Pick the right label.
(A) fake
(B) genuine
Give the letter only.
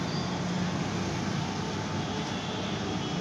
B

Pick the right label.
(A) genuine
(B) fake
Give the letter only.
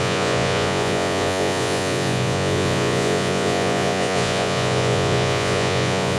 B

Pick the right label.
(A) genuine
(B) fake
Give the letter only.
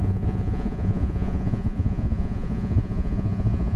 B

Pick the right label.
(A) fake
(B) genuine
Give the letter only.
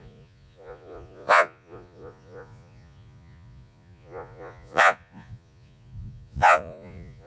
A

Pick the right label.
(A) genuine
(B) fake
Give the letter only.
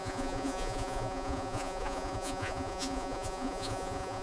B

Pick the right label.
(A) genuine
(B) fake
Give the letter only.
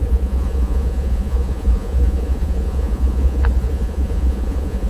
B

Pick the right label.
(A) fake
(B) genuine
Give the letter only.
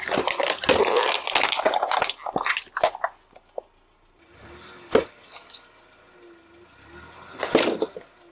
B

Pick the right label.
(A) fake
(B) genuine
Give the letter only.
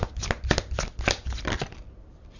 B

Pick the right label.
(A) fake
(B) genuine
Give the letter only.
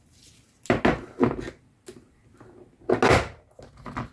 B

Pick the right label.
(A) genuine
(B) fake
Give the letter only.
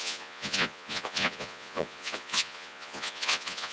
B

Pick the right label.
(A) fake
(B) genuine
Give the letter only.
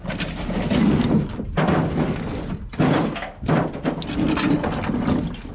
B